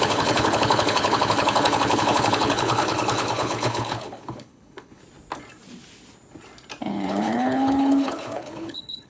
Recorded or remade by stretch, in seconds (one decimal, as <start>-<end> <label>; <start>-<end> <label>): 0.0-5.0 remade; 5.0-6.9 recorded; 6.9-9.1 remade